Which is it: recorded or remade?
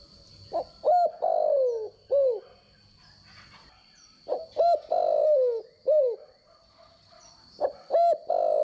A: recorded